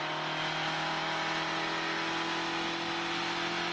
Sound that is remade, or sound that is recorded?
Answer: recorded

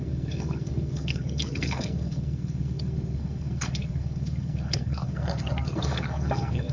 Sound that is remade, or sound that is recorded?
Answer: remade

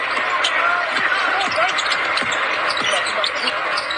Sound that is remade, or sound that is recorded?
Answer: recorded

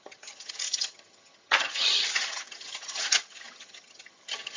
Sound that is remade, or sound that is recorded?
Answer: remade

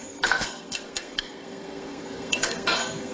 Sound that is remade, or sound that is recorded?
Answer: remade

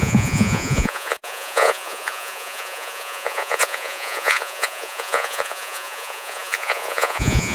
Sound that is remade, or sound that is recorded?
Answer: remade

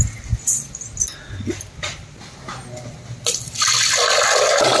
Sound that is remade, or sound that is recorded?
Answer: recorded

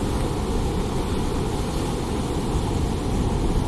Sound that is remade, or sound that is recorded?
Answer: recorded